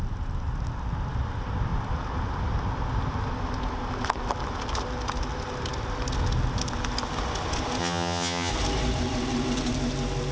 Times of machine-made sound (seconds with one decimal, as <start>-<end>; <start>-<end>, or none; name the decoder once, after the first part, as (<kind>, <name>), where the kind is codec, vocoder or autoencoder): 7.8-8.5 (vocoder, HiFi-GAN)